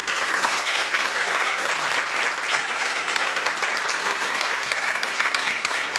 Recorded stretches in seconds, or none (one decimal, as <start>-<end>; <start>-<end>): 1.7-2.5; 3.5-4.0

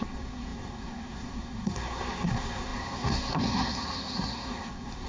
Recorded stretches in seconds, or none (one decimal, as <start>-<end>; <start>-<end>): none

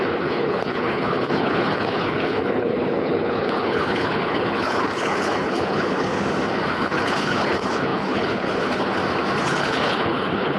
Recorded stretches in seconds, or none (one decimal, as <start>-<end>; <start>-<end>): 6.1-6.7; 9.0-9.6

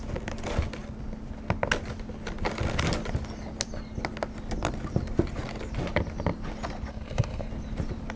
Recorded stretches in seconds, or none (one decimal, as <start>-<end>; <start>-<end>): 0.0-6.9; 7.5-8.2

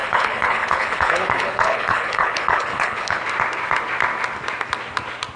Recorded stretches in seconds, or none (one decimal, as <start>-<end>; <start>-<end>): 3.2-5.4

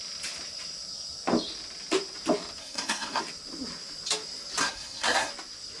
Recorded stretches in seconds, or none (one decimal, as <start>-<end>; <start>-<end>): 0.0-2.6; 3.2-4.6; 5.3-5.8

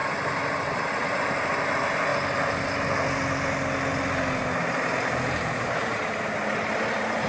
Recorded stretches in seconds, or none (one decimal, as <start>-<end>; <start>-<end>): 0.0-7.3

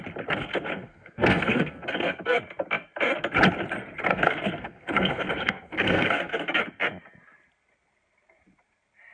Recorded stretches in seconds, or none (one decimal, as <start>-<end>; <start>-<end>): 0.0-0.4; 2.4-4.1; 6.6-9.1